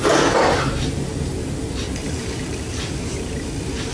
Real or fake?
real